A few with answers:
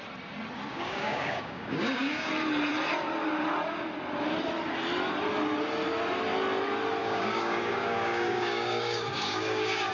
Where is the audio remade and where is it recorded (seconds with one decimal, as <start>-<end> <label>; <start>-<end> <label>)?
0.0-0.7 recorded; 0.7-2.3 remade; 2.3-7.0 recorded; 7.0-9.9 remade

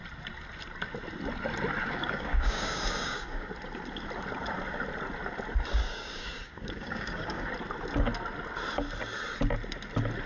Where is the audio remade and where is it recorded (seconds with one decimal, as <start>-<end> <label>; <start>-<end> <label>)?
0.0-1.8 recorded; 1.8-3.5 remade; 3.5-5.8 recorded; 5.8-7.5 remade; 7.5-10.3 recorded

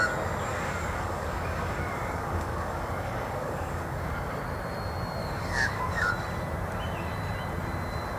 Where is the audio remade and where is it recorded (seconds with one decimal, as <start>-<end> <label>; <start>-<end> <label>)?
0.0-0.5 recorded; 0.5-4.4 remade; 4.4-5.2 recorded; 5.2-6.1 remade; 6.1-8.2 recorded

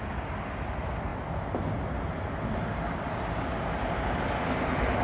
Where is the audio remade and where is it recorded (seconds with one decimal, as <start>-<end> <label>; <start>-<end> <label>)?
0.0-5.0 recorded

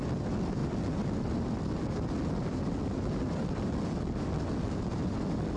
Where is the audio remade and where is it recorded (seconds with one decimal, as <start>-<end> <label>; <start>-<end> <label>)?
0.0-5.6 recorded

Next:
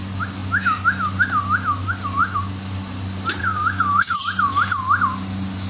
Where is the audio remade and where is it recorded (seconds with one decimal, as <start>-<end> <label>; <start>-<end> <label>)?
0.0-3.4 recorded; 3.4-4.2 remade; 4.2-5.7 recorded

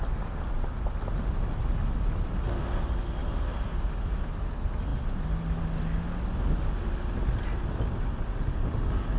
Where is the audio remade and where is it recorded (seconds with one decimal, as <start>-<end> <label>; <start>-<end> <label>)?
0.0-9.2 recorded

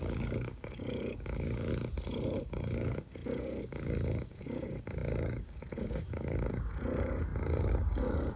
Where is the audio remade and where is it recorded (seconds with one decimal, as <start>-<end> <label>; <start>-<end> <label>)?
0.0-1.7 remade; 1.7-2.4 recorded; 2.4-8.4 remade